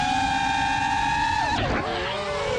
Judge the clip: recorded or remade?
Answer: recorded